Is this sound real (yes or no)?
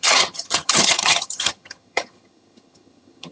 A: no